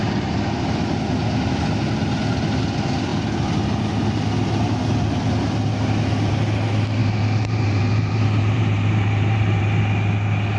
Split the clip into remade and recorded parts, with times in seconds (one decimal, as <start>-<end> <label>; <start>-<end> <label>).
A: 0.0-7.0 recorded; 7.0-9.6 remade; 9.6-10.6 recorded

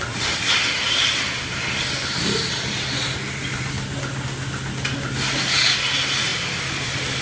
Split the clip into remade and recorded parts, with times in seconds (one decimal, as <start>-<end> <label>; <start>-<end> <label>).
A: 0.0-6.3 recorded; 6.3-7.2 remade

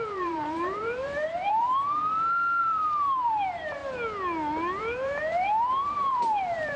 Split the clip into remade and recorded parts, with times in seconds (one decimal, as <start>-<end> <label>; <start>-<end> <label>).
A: 0.0-2.0 remade; 2.0-2.6 recorded; 2.6-3.8 remade; 3.8-4.8 recorded; 4.8-6.8 remade

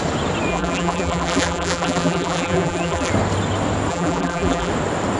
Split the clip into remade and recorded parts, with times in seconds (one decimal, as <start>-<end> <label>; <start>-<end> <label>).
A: 0.0-0.5 recorded; 0.5-3.1 remade; 3.1-3.9 recorded; 3.9-4.7 remade; 4.7-5.2 recorded

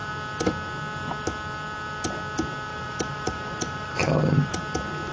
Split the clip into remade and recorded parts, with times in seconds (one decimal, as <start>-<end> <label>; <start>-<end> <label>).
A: 0.0-2.7 recorded; 2.7-4.6 remade; 4.6-5.1 recorded

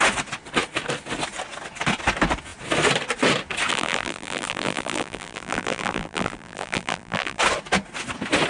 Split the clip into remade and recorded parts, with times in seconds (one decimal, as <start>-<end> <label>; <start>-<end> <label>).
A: 0.0-3.7 recorded; 3.7-7.4 remade; 7.4-8.5 recorded